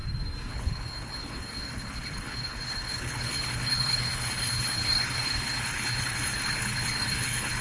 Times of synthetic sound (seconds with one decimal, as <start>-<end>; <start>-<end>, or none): 0.5-7.6